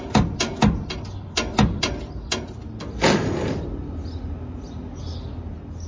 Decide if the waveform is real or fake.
real